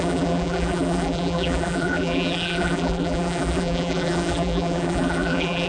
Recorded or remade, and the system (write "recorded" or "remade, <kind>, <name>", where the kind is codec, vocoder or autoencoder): remade, vocoder, BigVGAN v2